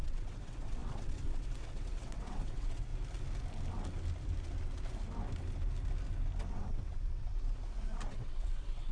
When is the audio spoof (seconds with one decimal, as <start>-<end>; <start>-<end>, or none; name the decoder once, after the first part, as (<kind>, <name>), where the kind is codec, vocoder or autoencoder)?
0.0-2.9 (vocoder, WaveNeXt); 6.5-7.3; 8.1-8.9